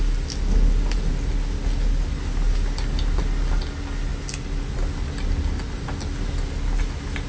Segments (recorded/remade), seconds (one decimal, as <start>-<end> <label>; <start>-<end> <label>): 0.0-7.3 recorded

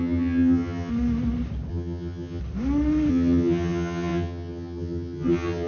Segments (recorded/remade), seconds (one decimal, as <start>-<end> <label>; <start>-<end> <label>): 0.0-0.9 remade; 0.9-1.7 recorded; 1.7-2.4 remade; 2.4-3.1 recorded; 3.1-5.7 remade

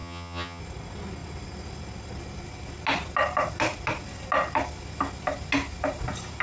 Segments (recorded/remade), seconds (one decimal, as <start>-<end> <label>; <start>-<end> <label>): 0.0-0.6 remade; 0.6-6.4 recorded

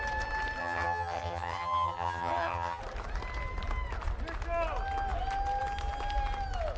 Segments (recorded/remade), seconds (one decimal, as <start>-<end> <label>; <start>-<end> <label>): 0.0-0.6 recorded; 0.6-2.8 remade; 2.8-6.8 recorded

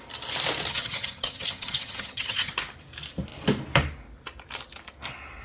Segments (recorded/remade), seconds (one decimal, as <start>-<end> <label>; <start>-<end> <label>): 0.0-0.7 recorded; 0.7-2.5 remade; 2.5-5.4 recorded

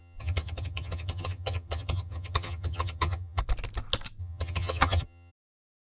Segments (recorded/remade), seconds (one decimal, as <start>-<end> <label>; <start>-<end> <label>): 0.0-3.4 remade; 3.4-4.2 recorded; 4.2-5.3 remade; 5.3-5.9 recorded